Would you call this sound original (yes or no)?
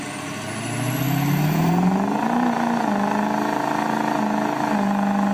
yes